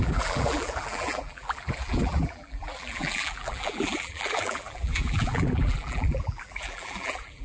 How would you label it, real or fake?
fake